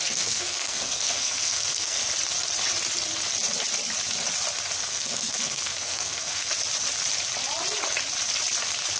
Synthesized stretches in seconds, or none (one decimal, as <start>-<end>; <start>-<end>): 0.0-2.0; 4.9-6.5